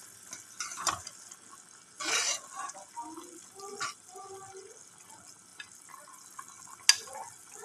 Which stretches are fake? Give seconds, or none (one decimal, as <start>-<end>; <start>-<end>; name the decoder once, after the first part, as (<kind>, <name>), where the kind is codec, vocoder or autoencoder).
none